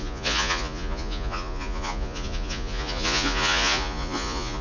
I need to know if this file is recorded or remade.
remade